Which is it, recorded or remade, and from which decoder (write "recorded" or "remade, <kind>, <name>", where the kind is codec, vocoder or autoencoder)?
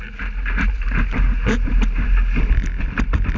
recorded